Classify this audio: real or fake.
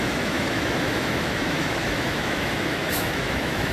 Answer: fake